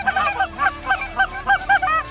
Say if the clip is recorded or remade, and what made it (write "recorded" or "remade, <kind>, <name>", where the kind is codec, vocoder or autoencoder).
recorded